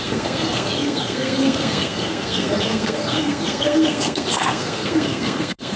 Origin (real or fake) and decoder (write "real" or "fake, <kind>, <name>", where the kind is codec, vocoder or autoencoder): fake, codec, SNAC